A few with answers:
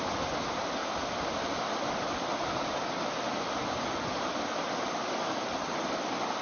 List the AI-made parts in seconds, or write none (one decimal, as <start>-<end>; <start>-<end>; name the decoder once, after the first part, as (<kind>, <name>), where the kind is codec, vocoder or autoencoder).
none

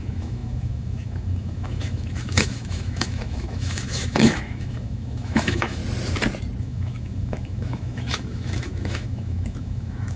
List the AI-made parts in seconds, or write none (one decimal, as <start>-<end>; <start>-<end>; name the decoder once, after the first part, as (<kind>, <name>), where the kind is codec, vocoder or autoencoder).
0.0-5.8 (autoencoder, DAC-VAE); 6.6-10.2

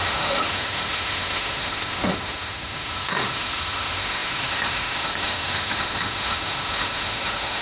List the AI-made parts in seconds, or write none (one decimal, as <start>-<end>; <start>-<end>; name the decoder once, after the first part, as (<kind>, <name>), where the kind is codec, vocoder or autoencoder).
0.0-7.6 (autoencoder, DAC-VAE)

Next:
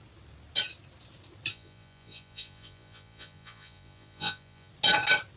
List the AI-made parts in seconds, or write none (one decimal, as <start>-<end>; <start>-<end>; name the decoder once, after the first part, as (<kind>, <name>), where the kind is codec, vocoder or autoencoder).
1.5-4.7 (vocoder, Vocos)

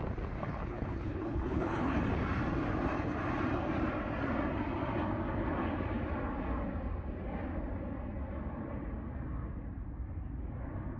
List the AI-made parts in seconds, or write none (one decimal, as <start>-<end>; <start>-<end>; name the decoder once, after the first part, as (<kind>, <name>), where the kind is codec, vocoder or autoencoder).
0.4-2.0 (codec, HILCodec)

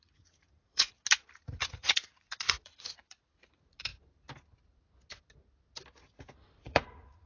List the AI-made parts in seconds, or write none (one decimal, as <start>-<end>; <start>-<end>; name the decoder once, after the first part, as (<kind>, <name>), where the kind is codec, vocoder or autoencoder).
0.0-1.0 (vocoder, Vocos); 1.8-3.9; 6.6-7.3

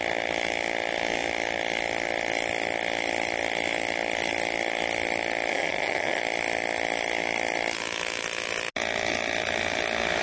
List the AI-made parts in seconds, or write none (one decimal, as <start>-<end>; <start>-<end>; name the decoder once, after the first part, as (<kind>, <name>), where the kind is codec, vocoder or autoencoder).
5.5-6.2 (vocoder, HiFi-GAN)

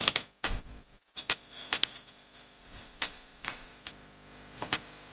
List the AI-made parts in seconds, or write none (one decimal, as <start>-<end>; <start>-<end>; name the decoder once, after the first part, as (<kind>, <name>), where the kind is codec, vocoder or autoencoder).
2.6-3.7 (vocoder, Vocos)